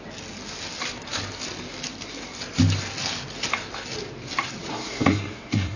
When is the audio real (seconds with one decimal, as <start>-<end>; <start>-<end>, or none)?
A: 0.0-4.7